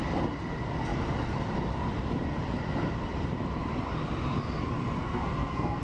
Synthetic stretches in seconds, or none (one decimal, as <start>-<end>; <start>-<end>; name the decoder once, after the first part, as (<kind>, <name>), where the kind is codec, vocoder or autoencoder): 5.0-5.8 (codec, SNAC)